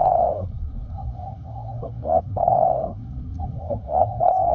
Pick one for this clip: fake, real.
fake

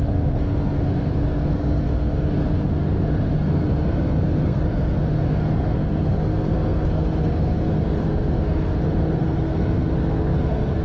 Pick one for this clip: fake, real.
fake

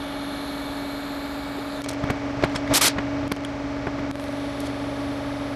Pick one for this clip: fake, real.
real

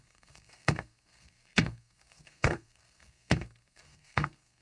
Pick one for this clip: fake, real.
fake